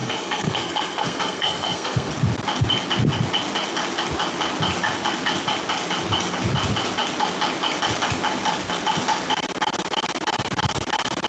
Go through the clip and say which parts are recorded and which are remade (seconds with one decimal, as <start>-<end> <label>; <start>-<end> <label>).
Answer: 0.0-2.1 remade; 2.1-11.3 recorded